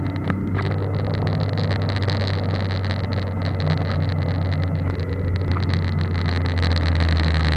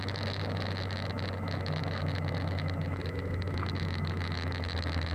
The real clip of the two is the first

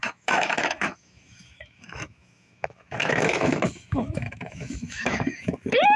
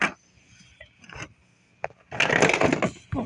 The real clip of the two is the second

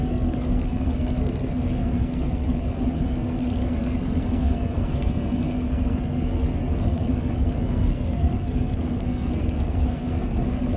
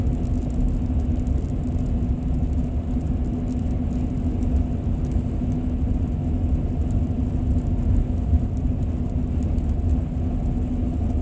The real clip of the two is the second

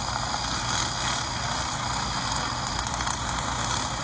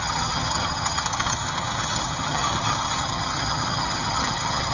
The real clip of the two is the first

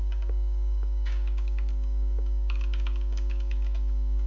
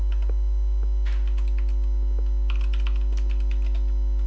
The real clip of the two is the second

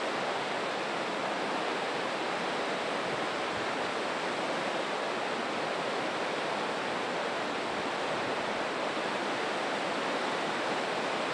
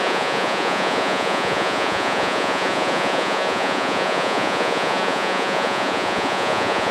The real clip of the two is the first